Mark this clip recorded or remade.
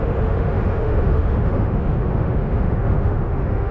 remade